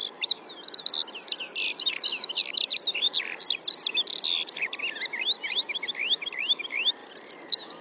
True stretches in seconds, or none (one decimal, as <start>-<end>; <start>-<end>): 0.0-7.8